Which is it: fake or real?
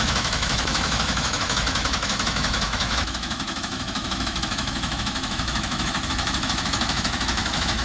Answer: fake